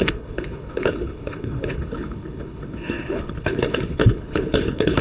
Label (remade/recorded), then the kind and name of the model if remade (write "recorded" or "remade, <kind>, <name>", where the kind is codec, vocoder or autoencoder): remade, codec, HILCodec